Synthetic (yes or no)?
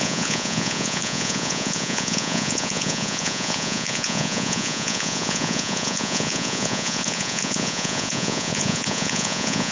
yes